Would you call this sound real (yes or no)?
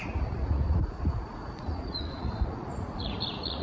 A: no